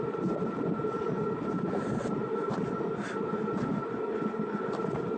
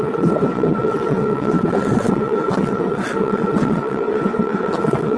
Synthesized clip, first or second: second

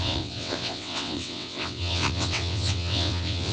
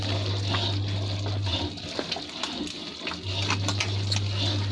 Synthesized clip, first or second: first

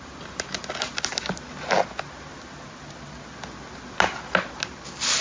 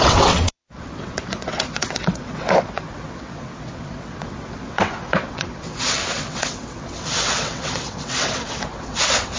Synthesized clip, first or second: second